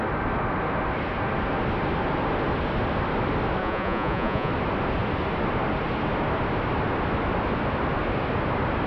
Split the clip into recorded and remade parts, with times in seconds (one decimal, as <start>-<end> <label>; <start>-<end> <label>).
0.0-3.6 recorded; 3.6-4.5 remade; 4.5-8.9 recorded